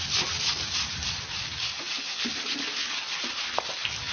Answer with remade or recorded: recorded